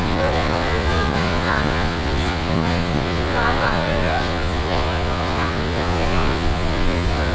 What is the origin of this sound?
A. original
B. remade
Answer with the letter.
B